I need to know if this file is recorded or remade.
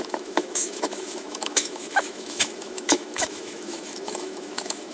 remade